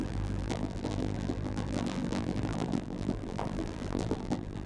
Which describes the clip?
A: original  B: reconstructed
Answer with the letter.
B